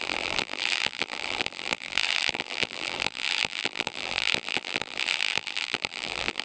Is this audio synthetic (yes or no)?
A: yes